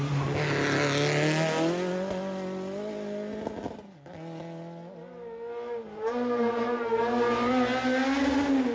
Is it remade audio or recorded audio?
recorded